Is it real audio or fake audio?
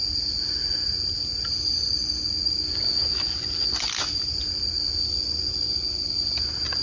real